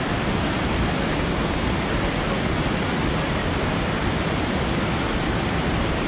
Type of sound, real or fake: real